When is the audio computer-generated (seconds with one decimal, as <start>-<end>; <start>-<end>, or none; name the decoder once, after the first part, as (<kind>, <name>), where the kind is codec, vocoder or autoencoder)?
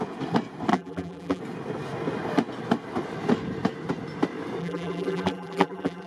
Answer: 0.7-1.4 (vocoder, BigVGAN v2); 4.6-6.1